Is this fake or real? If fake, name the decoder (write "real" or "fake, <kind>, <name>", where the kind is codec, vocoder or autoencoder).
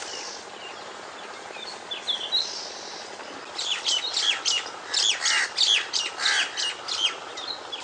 real